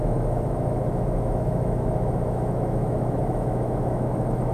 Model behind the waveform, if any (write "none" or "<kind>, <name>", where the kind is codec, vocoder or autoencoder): autoencoder, DAC-VAE